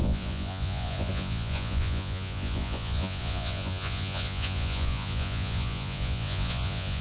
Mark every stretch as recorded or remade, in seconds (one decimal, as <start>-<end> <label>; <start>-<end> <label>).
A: 0.0-7.0 remade